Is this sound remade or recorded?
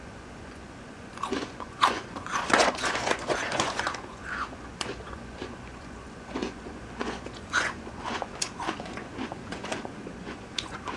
remade